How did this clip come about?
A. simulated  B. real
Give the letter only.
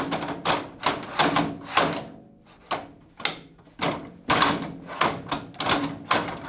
B